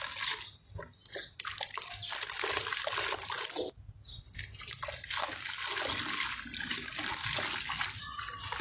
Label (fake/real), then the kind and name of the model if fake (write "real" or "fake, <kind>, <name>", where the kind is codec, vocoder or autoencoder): real